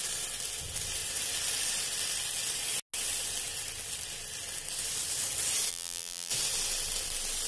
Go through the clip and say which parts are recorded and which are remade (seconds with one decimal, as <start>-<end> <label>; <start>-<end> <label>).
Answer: 0.0-5.7 recorded; 5.7-6.3 remade; 6.3-7.5 recorded